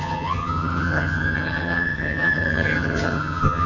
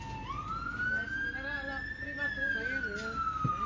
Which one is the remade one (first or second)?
first